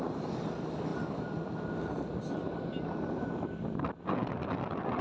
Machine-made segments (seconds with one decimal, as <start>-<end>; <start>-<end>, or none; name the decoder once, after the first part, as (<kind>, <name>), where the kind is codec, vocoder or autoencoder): none

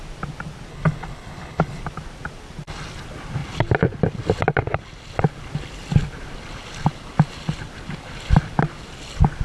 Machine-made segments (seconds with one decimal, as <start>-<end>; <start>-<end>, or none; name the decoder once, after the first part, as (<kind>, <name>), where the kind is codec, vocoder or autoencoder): 0.7-1.8 (codec, HILCodec)